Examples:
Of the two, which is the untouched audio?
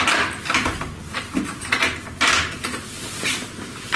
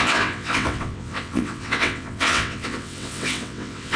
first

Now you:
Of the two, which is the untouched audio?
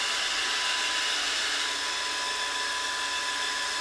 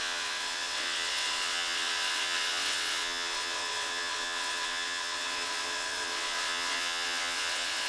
first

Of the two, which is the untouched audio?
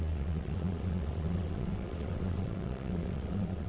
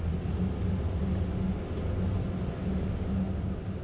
second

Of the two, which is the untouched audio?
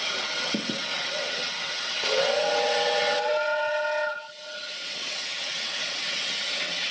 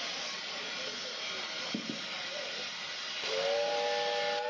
second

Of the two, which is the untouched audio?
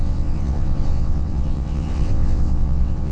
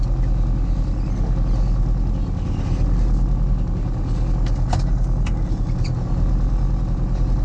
second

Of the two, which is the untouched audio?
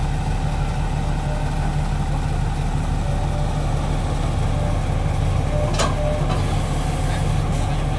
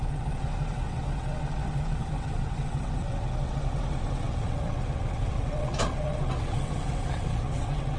first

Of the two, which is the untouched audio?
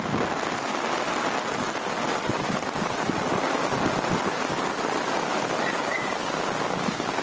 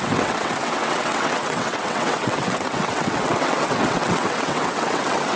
first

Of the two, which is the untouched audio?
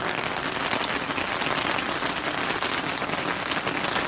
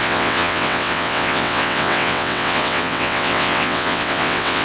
first